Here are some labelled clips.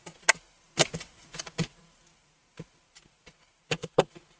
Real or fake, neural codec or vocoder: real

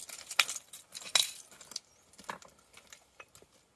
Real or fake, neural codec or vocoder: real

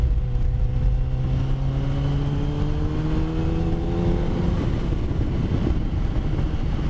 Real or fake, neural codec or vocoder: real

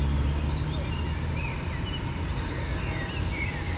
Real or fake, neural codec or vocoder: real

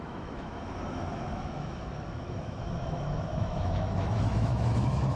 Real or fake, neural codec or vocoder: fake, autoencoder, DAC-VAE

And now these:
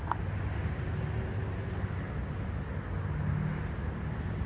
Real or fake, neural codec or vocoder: real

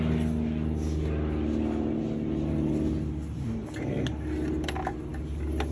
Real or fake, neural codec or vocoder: real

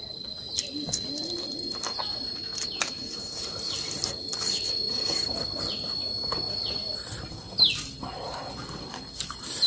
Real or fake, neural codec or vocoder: real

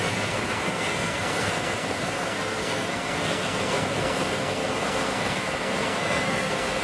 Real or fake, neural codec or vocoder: fake, codec, SNAC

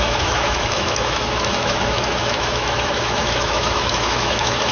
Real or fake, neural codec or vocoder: fake, autoencoder, DAC-VAE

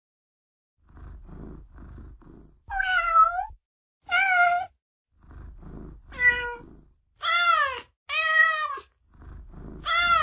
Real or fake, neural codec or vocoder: real